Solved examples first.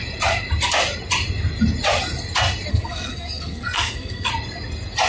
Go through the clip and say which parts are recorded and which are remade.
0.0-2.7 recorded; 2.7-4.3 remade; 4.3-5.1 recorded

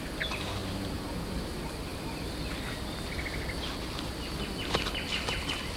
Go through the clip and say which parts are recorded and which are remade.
0.0-0.6 recorded; 0.6-1.4 remade; 1.4-1.9 recorded; 1.9-5.8 remade

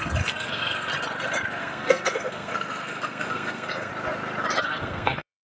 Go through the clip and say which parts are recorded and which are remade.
0.0-0.9 remade; 0.9-1.6 recorded; 1.6-3.9 remade; 3.9-4.6 recorded; 4.6-5.4 remade

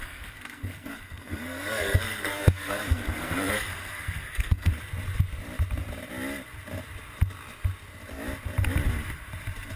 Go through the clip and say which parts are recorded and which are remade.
0.0-4.7 remade; 4.7-9.8 recorded